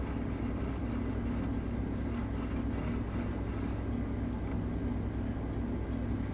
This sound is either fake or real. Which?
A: real